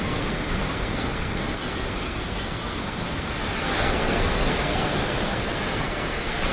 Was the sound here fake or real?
fake